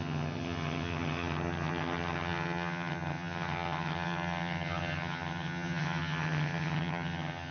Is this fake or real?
fake